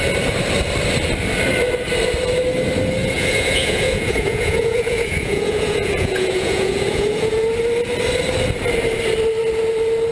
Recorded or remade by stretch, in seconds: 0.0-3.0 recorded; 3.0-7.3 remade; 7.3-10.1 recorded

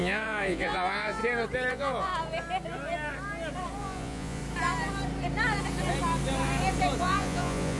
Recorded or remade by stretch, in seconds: 0.0-1.2 remade; 1.2-1.7 recorded; 1.7-2.1 remade; 2.1-3.8 recorded; 3.8-4.4 remade; 4.4-7.0 recorded; 7.0-7.8 remade

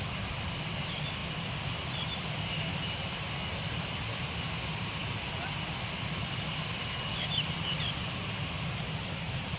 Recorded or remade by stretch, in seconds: 0.0-9.6 recorded

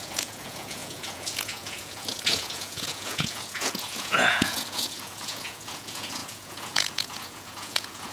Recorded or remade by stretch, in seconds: 0.0-8.1 remade

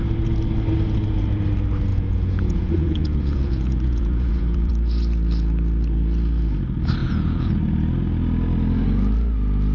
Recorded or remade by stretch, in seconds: 0.0-1.9 recorded; 1.9-4.7 remade; 4.7-7.0 recorded; 7.0-7.6 remade; 7.6-9.7 recorded

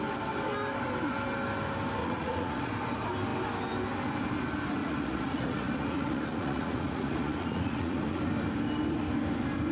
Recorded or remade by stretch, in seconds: 0.0-2.0 recorded; 2.0-2.7 remade; 2.7-4.8 recorded; 4.8-8.2 remade; 8.2-9.7 recorded

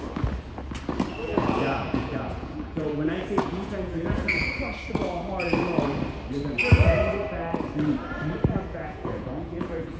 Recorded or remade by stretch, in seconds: 0.0-1.2 recorded; 1.2-4.5 remade; 4.5-8.7 recorded; 8.7-10.0 remade